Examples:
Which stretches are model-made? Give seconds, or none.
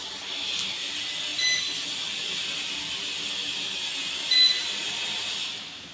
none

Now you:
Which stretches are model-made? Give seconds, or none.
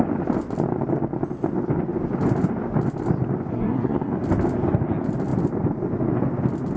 3.5-4.1 (codec, SNAC)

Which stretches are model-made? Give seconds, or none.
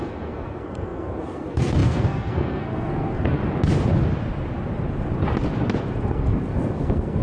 0.0-3.4 (codec, SNAC); 5.8-7.2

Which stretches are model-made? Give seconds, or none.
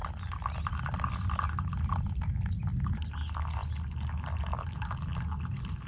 none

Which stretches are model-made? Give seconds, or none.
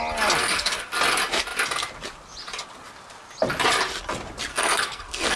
0.4-0.9 (codec, SNAC); 4.5-5.4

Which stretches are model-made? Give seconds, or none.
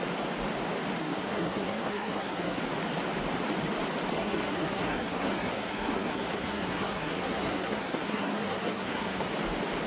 1.0-2.6 (codec, SNAC); 4.1-9.3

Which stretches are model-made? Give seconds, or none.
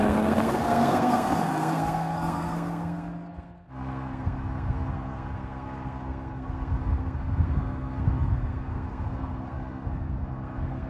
0.0-10.9 (codec, SNAC)